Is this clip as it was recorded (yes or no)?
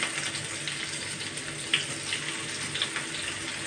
yes